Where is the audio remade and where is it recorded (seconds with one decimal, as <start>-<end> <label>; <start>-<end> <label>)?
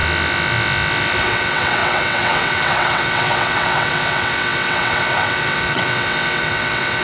0.0-1.2 recorded; 1.2-7.0 remade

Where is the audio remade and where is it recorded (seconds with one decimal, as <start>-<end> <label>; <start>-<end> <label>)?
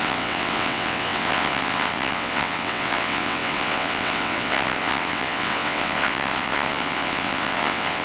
0.0-8.0 remade